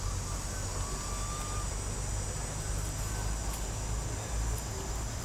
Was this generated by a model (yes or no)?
no